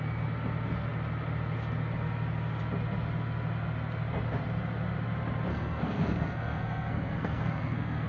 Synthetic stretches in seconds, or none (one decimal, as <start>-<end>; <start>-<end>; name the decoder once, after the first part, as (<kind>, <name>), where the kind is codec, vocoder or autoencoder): 5.5-8.1 (codec, SNAC)